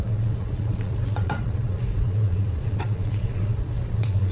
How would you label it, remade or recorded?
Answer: remade